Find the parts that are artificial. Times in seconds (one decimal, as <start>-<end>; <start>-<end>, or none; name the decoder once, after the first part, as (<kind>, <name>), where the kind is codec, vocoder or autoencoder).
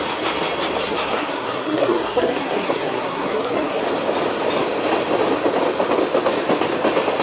0.8-3.8 (codec, SNAC)